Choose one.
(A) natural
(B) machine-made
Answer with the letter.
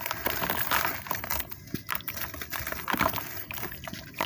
B